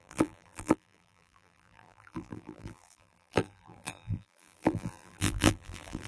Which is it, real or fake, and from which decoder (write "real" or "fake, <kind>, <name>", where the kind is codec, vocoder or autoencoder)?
fake, vocoder, BigVGAN v2